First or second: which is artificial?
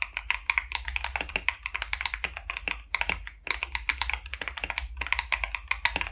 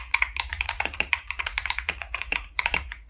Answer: second